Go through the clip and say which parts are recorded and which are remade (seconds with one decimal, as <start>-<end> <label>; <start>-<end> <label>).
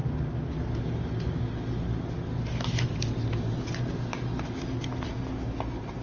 0.0-6.0 recorded